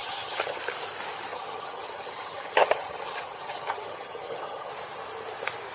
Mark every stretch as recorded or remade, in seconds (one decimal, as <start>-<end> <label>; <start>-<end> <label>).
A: 0.0-0.6 remade; 0.6-1.3 recorded; 1.3-4.7 remade; 4.7-5.7 recorded